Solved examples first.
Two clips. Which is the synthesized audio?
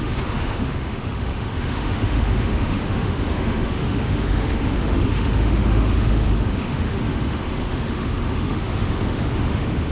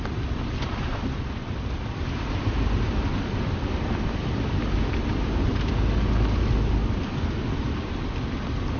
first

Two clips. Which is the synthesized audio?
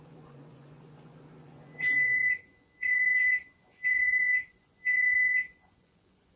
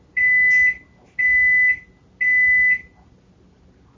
first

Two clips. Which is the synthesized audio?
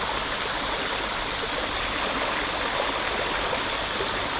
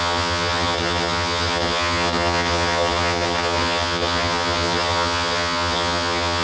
second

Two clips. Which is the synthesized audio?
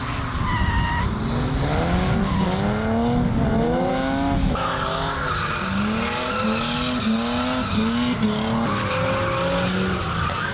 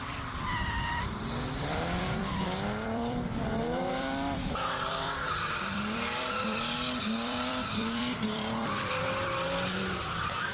second